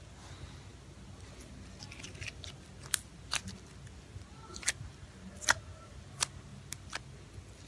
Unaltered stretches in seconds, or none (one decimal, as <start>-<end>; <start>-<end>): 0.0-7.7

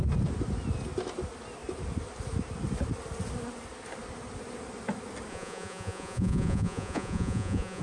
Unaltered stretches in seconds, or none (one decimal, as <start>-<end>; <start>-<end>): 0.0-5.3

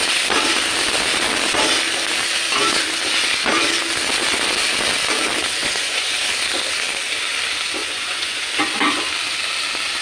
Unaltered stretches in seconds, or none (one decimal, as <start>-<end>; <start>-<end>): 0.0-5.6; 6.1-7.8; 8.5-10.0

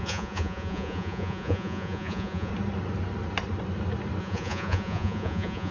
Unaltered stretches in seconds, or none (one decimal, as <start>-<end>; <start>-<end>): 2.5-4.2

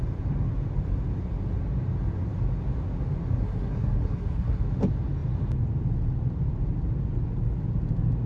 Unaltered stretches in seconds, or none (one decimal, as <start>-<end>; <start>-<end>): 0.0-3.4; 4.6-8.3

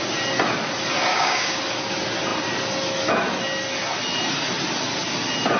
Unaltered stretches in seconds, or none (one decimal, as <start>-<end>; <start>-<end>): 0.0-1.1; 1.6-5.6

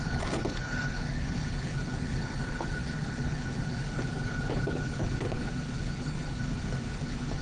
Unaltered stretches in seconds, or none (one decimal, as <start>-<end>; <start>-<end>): none